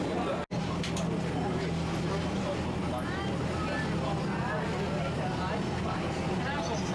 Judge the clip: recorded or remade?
recorded